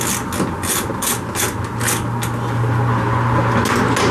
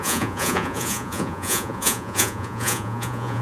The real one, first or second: first